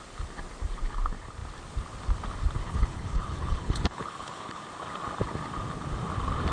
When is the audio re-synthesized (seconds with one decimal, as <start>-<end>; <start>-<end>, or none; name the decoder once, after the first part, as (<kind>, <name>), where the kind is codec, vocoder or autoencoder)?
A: 2.6-4.6 (codec, HILCodec)